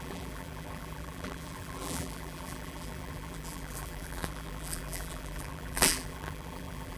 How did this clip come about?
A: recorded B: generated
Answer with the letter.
B